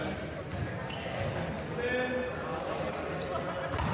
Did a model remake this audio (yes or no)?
no